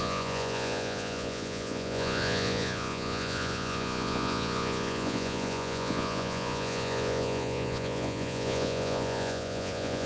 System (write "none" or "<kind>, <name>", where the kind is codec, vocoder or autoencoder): vocoder, Vocos